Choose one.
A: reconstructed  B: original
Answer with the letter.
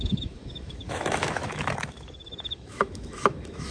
A